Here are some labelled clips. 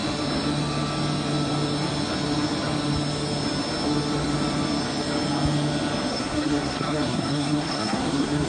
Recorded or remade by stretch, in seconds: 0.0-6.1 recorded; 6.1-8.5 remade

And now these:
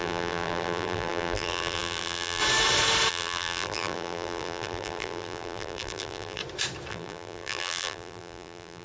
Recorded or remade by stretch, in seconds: 0.0-2.4 remade; 2.4-3.1 recorded; 3.1-6.4 remade; 6.4-6.9 recorded; 6.9-8.8 remade

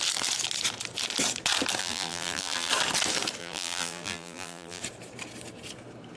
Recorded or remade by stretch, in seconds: 0.0-1.8 recorded; 1.8-2.7 remade; 2.7-3.4 recorded; 3.4-4.8 remade; 4.8-6.2 recorded

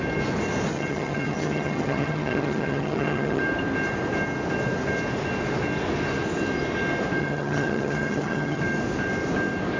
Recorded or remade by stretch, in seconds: 0.0-0.7 recorded; 0.7-3.4 remade; 3.4-7.2 recorded; 7.2-8.6 remade; 8.6-9.8 recorded

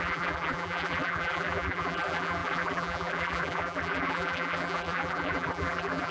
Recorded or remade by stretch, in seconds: 0.0-6.1 remade

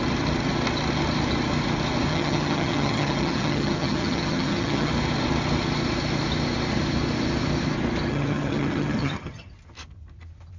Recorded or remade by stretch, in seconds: 0.0-2.1 recorded; 2.1-4.9 remade; 4.9-8.1 recorded; 8.1-9.5 remade; 9.5-10.6 recorded